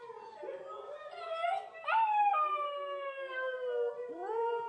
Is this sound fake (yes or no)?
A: no